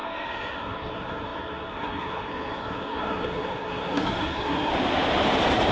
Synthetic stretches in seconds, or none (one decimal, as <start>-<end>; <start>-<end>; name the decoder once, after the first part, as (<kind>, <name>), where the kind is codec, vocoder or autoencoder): 0.0-4.7 (codec, SNAC)